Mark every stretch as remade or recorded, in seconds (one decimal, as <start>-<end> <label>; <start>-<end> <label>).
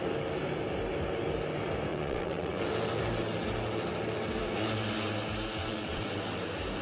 0.0-1.9 recorded; 1.9-2.6 remade; 2.6-5.6 recorded; 5.6-6.2 remade; 6.2-6.8 recorded